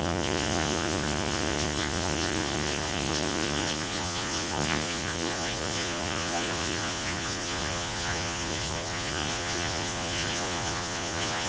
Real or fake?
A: fake